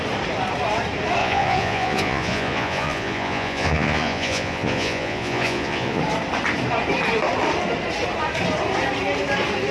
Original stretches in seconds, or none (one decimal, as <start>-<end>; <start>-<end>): 0.0-1.2; 6.0-9.7